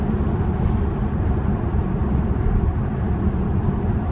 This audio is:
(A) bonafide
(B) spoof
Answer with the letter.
A